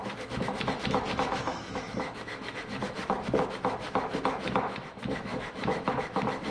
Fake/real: fake